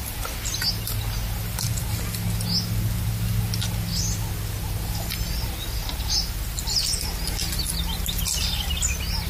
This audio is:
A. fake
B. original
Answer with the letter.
B